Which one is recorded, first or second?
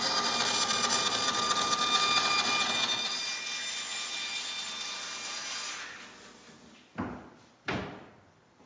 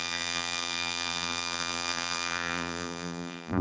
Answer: first